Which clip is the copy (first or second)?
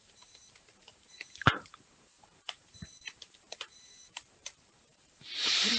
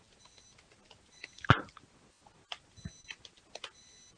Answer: first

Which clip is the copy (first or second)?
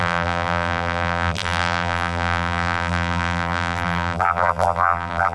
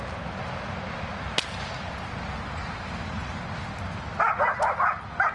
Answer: first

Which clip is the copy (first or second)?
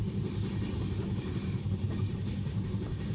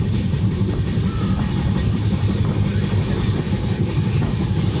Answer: second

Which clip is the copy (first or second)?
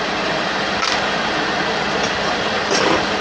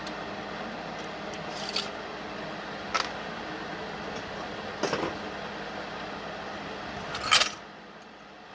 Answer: first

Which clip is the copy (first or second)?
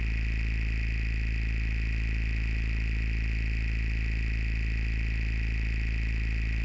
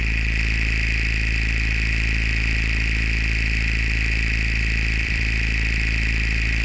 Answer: second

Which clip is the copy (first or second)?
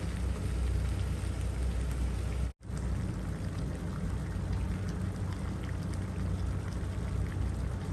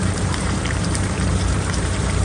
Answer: second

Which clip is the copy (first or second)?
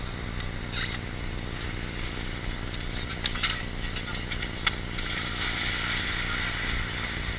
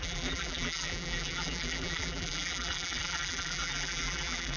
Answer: second